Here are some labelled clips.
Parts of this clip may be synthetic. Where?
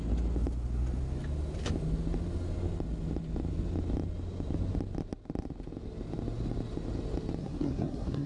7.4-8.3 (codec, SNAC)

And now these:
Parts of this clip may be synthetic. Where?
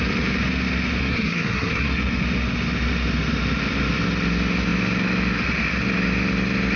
1.0-2.2 (codec, SNAC)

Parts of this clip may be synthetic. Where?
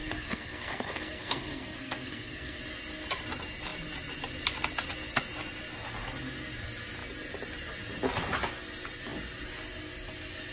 0.0-2.6 (codec, SNAC)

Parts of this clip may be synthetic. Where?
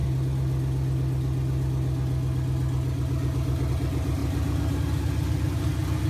none